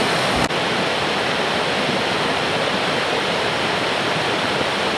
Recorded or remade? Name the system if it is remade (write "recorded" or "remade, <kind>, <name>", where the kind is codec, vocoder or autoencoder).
recorded